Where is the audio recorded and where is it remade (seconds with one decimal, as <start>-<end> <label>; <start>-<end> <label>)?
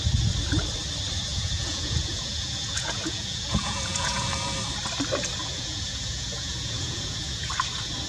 0.0-1.3 recorded; 1.3-4.3 remade; 4.3-5.4 recorded; 5.4-7.5 remade; 7.5-8.1 recorded